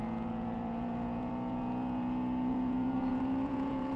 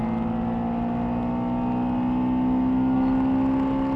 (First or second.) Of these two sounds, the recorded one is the second